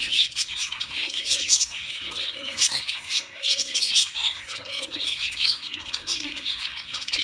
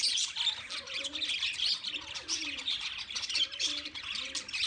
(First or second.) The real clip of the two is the second